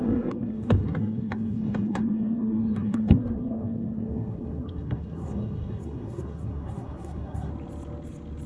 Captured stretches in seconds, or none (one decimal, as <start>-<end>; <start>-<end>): 7.5-8.5